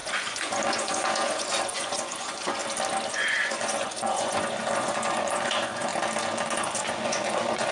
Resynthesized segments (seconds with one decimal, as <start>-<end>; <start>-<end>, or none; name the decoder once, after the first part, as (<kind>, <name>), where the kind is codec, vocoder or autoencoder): 0.0-2.6 (vocoder, Vocos); 3.1-5.9; 6.6-7.7